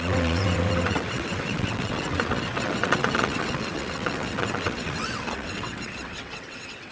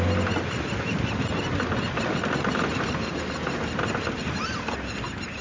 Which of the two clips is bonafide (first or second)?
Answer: second